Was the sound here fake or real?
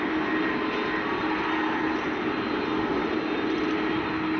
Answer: real